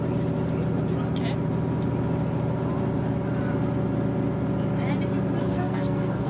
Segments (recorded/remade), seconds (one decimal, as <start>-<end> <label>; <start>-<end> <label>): 0.0-5.4 recorded; 5.4-6.3 remade